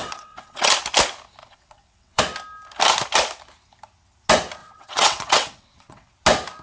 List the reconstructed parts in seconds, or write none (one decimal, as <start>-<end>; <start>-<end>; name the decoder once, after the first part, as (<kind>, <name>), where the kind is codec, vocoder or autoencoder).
0.0-0.7 (vocoder, WaveNeXt); 1.4-2.2; 4.6-6.1